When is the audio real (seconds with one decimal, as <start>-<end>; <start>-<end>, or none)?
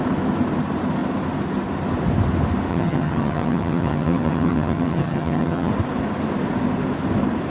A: 0.0-2.7; 5.7-7.5